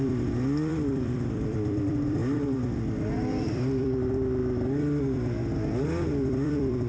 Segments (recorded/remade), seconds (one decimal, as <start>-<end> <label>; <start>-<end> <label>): 0.0-2.2 remade; 2.2-2.8 recorded; 2.8-4.4 remade; 4.4-5.0 recorded; 5.0-6.9 remade